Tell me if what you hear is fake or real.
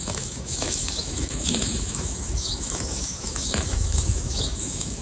fake